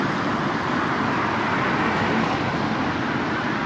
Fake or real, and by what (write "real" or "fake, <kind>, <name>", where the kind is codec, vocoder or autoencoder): real